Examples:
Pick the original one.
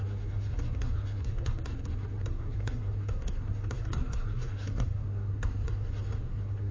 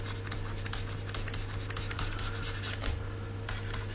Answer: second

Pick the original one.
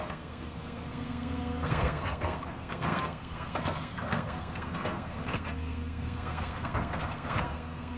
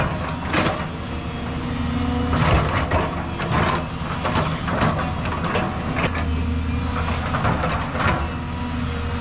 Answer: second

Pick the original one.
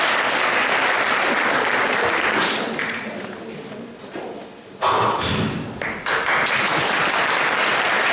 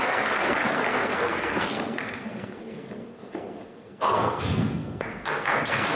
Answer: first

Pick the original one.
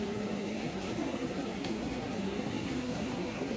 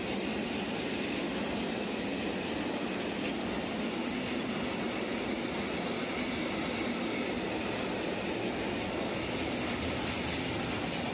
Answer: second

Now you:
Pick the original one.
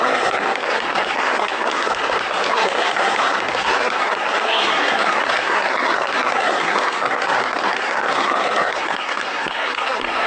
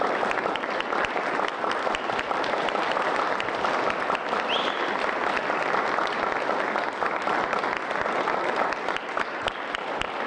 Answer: second